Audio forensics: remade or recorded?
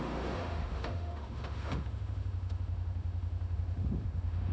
remade